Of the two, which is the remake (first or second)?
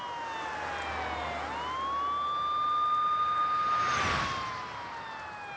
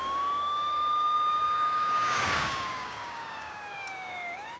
second